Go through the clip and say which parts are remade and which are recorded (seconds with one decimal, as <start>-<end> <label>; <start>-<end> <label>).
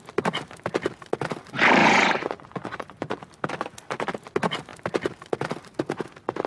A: 0.0-1.8 recorded; 1.8-3.2 remade; 3.2-6.5 recorded